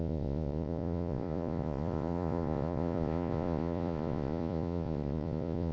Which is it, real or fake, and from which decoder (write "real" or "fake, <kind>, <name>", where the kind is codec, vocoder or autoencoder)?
fake, vocoder, Vocos